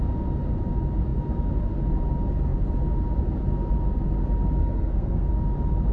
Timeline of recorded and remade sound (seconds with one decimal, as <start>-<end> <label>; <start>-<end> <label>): 0.0-4.6 recorded; 4.6-5.3 remade; 5.3-5.9 recorded